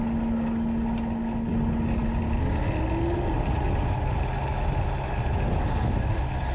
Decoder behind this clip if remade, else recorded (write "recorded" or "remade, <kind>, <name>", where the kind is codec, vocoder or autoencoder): recorded